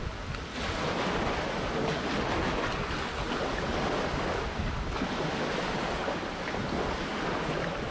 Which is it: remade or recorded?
recorded